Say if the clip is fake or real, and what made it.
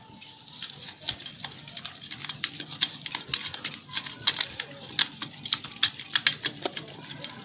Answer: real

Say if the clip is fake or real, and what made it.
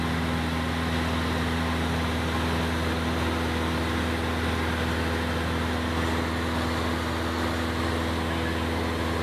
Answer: real